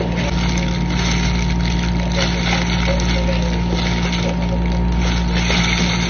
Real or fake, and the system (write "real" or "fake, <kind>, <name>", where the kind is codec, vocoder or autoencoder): real